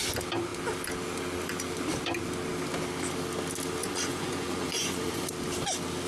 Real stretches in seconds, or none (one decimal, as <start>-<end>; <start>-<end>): 0.0-3.8; 5.3-6.1